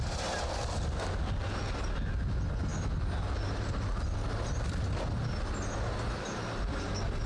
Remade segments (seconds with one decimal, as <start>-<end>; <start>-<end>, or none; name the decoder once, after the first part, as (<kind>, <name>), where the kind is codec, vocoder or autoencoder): none